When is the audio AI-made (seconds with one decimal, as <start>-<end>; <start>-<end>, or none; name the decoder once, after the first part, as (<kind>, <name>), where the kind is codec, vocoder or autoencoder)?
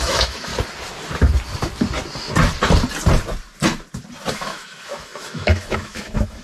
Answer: 0.0-0.5 (autoencoder, DAC-VAE); 4.3-6.4